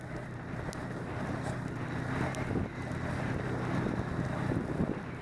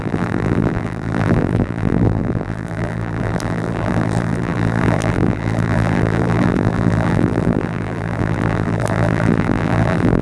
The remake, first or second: second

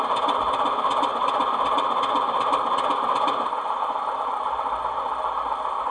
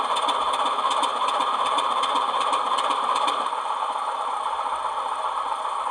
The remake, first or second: second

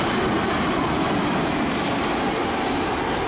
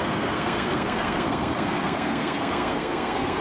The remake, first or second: second